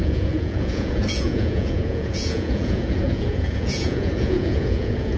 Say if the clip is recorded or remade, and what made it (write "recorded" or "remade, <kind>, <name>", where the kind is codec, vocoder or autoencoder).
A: remade, vocoder, Vocos